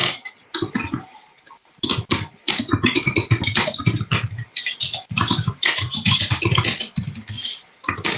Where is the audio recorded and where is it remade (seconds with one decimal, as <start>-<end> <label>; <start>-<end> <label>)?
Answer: 0.0-4.4 remade; 4.4-5.0 recorded; 5.0-8.2 remade